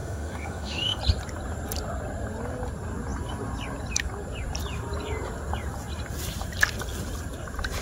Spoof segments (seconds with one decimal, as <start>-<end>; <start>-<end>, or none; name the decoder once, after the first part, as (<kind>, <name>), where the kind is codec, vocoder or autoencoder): 0.0-1.0 (autoencoder, DAC-VAE)